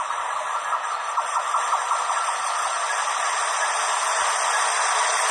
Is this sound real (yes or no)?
yes